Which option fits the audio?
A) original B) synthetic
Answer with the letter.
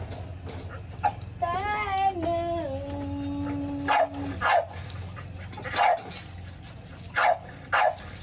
A